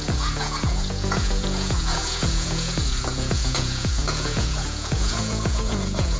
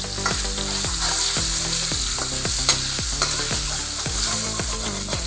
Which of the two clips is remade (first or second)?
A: first